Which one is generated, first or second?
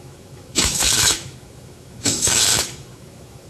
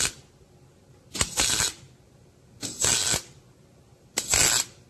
first